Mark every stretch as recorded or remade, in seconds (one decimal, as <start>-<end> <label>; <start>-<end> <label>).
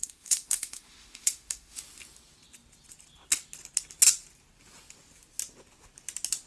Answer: 0.0-1.8 remade; 1.8-6.5 recorded